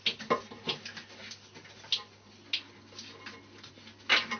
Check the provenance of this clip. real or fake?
real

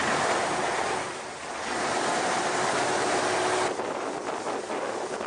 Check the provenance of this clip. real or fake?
real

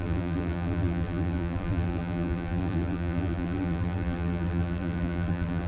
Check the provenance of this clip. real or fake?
fake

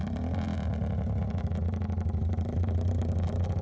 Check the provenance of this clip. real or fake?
real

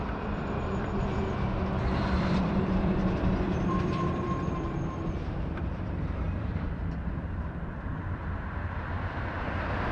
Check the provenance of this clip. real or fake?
fake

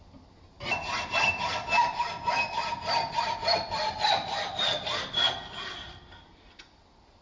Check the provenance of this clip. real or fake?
real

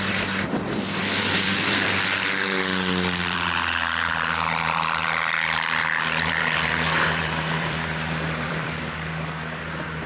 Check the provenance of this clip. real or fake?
fake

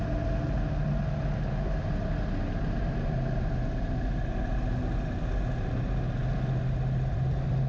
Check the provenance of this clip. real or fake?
real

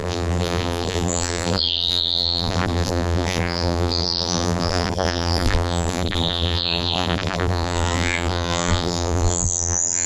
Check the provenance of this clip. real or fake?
fake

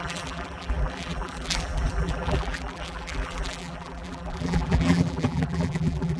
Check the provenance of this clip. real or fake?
fake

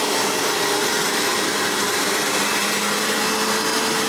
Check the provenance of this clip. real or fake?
real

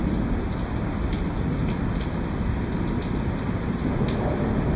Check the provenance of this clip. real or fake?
real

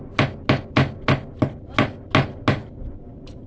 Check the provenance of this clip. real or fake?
real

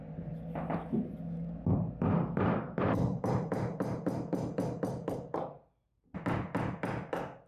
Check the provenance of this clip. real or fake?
real